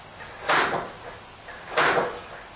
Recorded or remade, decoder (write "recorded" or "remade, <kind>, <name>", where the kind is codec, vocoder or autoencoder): recorded